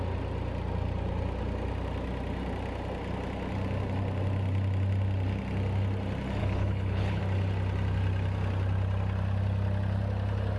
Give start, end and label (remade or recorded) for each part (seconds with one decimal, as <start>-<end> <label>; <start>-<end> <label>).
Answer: 0.0-6.4 recorded; 6.4-7.2 remade; 7.2-10.6 recorded